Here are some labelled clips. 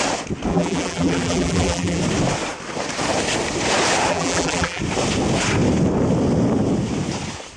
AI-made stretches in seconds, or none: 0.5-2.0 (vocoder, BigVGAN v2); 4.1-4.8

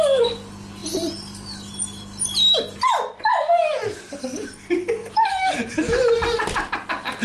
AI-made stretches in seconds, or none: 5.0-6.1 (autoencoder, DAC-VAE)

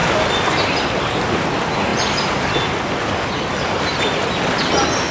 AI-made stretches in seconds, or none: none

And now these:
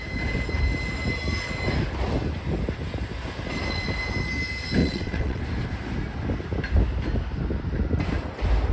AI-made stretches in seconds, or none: 4.8-5.4 (vocoder, WaveNeXt)

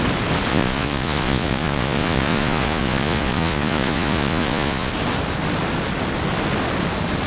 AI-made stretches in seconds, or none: 0.5-4.9 (vocoder, Vocos)